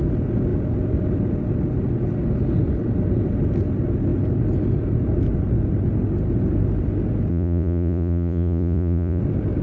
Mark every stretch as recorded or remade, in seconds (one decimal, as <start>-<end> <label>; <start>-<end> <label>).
0.0-7.3 recorded; 7.3-9.2 remade; 9.2-9.6 recorded